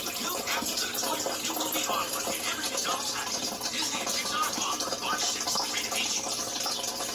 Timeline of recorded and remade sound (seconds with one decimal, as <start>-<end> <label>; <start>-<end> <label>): 0.0-7.1 recorded

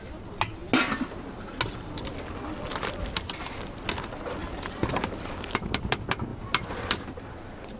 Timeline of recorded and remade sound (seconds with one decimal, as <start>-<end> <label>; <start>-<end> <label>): 0.0-0.6 remade; 0.6-4.7 recorded; 4.7-7.8 remade